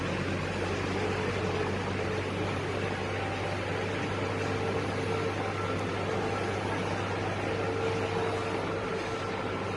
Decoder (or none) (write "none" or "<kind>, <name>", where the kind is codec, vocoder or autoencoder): none